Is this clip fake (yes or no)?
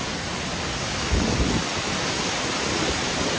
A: no